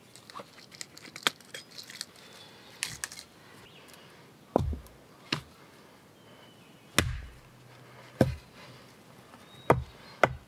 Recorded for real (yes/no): yes